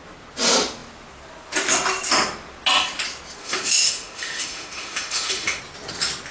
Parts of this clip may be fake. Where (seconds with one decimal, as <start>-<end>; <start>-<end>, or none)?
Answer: 3.4-5.6

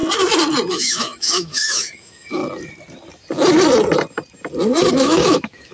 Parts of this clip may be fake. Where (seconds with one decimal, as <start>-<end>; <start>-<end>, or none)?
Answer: 0.7-2.4; 4.9-5.7

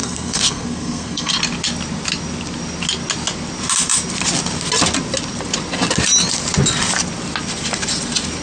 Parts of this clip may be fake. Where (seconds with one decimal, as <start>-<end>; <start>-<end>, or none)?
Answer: 0.0-1.3

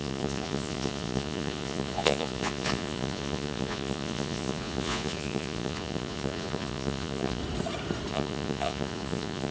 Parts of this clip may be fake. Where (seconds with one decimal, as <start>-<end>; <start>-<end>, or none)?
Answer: 0.0-7.4; 8.1-9.5

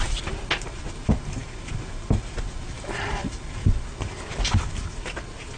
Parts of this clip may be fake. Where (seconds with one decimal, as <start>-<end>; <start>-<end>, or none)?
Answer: none

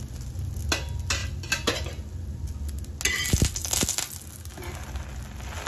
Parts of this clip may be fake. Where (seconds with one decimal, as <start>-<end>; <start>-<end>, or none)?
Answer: none

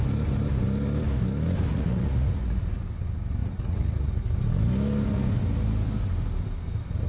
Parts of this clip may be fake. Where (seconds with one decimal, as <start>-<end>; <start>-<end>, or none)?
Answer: 1.7-2.8; 3.4-4.1